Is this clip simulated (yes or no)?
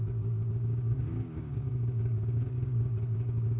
yes